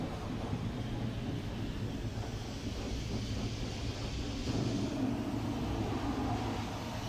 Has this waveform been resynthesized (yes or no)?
no